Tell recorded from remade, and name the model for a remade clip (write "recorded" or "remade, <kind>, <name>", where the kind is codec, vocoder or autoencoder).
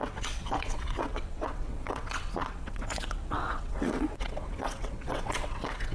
remade, vocoder, WaveNeXt